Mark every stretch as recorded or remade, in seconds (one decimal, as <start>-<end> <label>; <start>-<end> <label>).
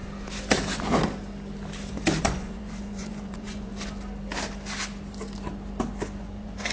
0.0-2.2 recorded; 2.2-3.7 remade; 3.7-6.2 recorded; 6.2-6.7 remade